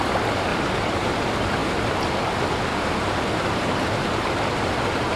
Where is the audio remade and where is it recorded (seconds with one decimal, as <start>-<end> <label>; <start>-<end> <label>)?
0.0-0.5 recorded; 0.5-1.2 remade; 1.2-1.6 recorded; 1.6-2.2 remade; 2.2-2.7 recorded; 2.7-4.0 remade; 4.0-5.2 recorded